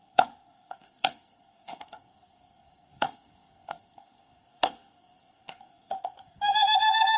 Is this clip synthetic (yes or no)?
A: yes